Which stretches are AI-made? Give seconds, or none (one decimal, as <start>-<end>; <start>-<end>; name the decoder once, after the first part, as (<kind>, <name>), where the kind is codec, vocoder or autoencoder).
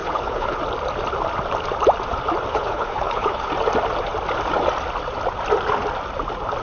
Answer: 0.0-0.6 (codec, HILCodec); 2.5-3.5